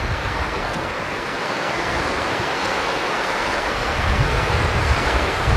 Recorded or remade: remade